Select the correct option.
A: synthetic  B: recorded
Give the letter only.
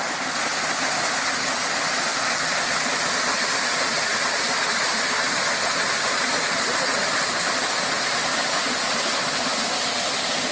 B